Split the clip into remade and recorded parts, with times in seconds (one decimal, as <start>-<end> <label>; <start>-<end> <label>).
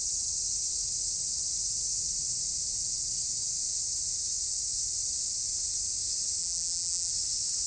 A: 0.0-6.4 recorded; 6.4-7.1 remade; 7.1-7.7 recorded